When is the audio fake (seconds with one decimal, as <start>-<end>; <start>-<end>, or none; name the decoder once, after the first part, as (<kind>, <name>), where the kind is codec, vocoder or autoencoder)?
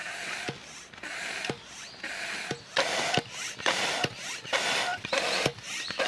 none